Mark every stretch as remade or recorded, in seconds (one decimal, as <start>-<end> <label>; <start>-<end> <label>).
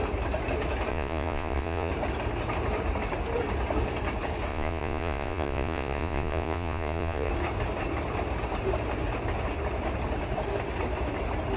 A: 0.0-0.9 recorded; 0.9-1.9 remade; 1.9-4.5 recorded; 4.5-7.3 remade; 7.3-11.6 recorded